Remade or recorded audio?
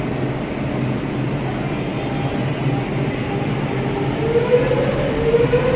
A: recorded